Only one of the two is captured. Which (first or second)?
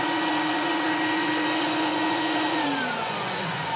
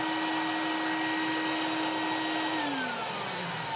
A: second